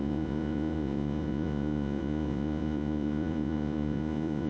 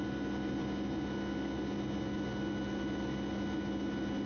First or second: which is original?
second